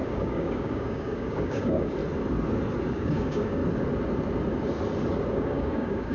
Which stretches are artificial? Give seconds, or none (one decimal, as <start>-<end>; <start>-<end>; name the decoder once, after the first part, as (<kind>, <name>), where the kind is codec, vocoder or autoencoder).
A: 0.0-2.0 (codec, DAC); 2.9-3.6; 5.3-6.1

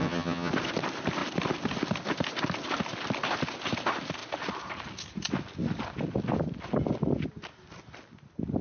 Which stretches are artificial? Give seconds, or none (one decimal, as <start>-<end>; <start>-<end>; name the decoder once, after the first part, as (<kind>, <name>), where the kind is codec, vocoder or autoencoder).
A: 0.0-0.5 (vocoder, HiFi-GAN)

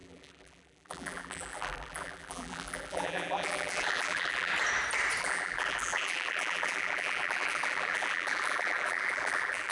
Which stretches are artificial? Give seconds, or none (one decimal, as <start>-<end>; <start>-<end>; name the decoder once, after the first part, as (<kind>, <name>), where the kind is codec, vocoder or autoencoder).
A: 0.0-4.5 (vocoder, BigVGAN v2); 5.2-9.7